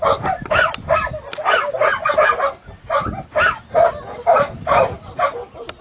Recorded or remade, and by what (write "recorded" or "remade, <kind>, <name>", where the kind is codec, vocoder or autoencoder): recorded